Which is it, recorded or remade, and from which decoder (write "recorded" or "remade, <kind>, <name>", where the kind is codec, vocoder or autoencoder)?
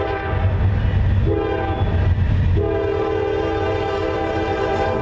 recorded